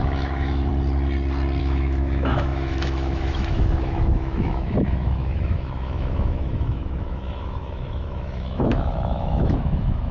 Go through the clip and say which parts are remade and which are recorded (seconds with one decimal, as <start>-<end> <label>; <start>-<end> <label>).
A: 0.0-0.7 remade; 0.7-1.6 recorded; 1.6-10.1 remade